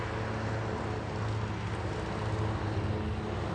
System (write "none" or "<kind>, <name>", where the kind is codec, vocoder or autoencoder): none